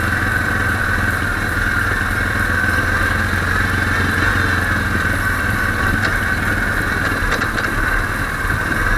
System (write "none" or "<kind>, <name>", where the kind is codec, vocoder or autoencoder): none